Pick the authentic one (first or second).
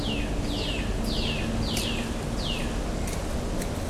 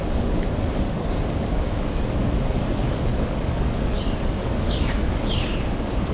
first